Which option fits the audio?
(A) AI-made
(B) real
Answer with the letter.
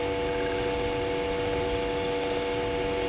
B